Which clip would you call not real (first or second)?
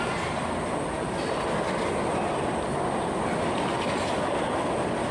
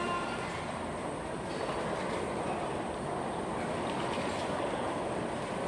second